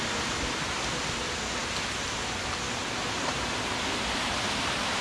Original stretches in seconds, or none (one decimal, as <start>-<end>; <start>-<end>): 0.0-5.0